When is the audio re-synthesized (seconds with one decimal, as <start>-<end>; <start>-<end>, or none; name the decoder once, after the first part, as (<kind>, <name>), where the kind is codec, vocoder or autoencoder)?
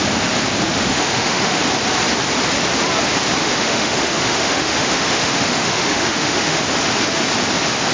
0.7-1.6 (autoencoder, DAC-VAE); 3.4-6.6